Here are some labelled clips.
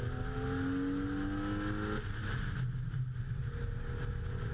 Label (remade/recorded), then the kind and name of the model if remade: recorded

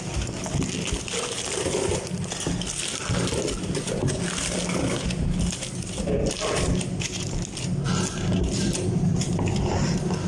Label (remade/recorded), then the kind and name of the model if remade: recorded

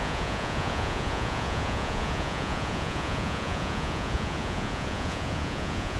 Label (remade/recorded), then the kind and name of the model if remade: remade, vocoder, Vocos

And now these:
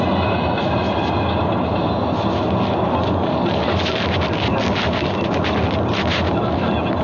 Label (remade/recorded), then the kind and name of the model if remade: recorded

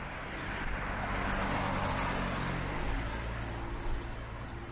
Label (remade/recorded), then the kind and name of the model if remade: recorded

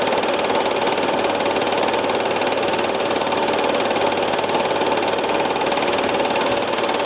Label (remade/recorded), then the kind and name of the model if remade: recorded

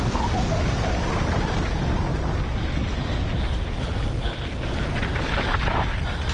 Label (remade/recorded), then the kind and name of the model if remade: recorded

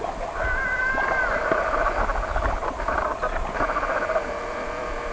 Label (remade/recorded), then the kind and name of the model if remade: recorded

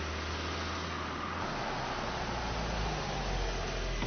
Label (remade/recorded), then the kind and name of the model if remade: recorded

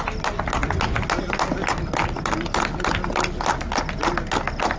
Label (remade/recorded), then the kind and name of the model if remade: recorded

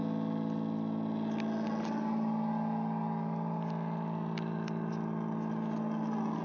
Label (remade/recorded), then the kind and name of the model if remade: recorded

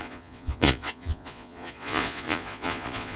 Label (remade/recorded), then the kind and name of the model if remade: remade, vocoder, Vocos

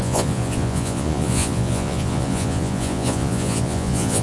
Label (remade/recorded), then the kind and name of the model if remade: remade, vocoder, Vocos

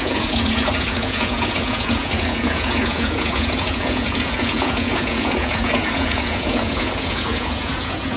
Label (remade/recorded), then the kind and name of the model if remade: remade, vocoder, Vocos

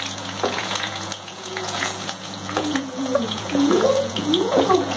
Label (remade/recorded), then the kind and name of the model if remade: remade, vocoder, Vocos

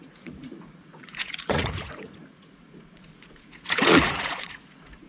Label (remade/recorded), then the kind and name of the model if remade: remade, vocoder, Vocos